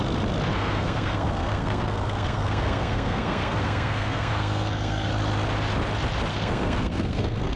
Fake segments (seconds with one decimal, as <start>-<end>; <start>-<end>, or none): 0.5-5.1; 6.3-7.6